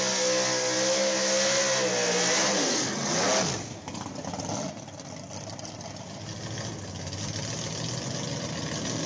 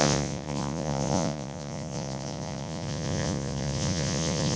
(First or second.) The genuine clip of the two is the first